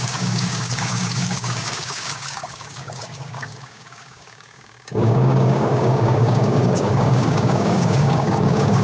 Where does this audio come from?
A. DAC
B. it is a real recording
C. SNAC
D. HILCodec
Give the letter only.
A